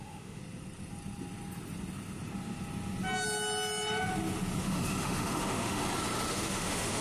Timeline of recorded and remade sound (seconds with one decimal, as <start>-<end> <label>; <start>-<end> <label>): 0.0-0.4 remade; 0.4-4.6 recorded; 4.6-5.8 remade; 5.8-6.3 recorded; 6.3-7.0 remade